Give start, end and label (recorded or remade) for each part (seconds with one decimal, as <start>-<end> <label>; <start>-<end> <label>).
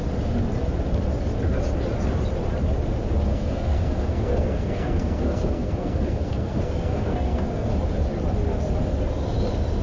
0.0-3.3 recorded; 3.3-7.7 remade; 7.7-9.8 recorded